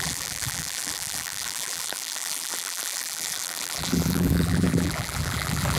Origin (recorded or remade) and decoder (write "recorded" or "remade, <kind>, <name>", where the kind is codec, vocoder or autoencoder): remade, vocoder, BigVGAN v2